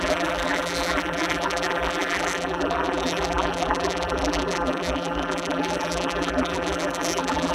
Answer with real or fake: fake